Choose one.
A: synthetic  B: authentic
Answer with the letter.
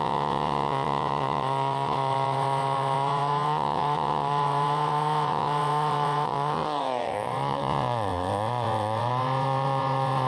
A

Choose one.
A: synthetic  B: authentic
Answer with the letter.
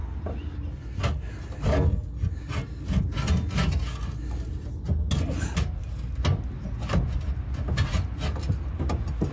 B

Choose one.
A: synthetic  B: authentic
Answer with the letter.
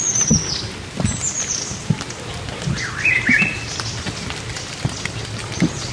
B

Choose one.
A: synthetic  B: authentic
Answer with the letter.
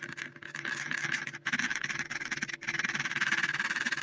B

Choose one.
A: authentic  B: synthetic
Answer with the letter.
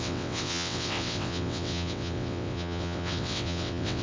B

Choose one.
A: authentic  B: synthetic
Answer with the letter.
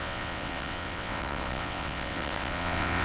B